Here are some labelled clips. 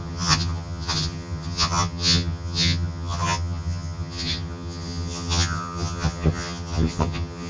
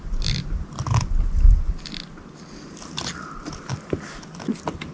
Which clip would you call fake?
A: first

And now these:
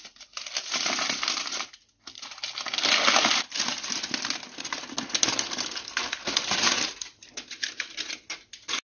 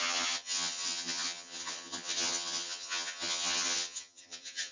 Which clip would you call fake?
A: second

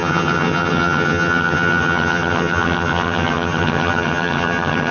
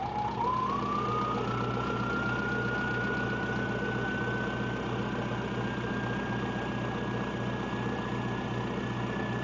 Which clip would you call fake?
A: first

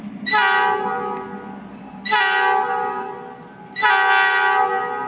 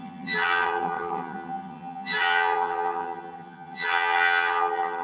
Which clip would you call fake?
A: second